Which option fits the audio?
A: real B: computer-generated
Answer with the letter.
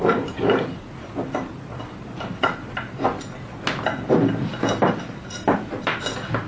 A